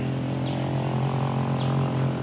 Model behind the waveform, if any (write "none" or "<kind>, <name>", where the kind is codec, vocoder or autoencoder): none